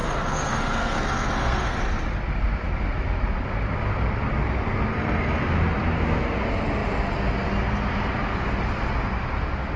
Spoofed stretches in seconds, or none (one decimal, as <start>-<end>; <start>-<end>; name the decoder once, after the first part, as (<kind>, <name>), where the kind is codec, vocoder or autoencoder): 0.0-1.8 (codec, SNAC); 4.9-5.4